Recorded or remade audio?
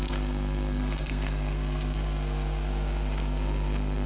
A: remade